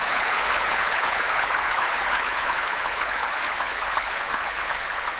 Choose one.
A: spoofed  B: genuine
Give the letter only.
A